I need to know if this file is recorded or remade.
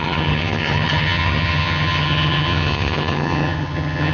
remade